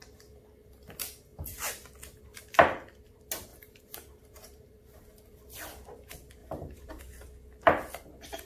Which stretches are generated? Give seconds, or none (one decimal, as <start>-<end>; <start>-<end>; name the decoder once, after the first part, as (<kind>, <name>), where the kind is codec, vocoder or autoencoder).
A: 3.5-5.0 (vocoder, BigVGAN v2); 6.4-7.0